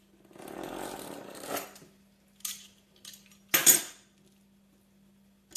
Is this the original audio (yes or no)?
yes